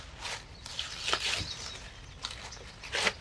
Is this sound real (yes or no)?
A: yes